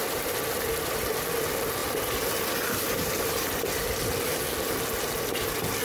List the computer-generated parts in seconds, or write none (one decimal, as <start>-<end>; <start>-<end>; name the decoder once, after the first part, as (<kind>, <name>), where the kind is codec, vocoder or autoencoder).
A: none